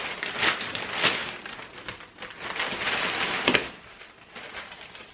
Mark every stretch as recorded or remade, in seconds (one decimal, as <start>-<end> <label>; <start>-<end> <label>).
0.0-5.1 recorded